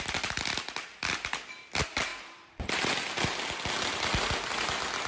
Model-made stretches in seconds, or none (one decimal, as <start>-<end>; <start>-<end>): none